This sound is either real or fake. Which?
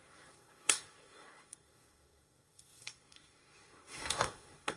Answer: fake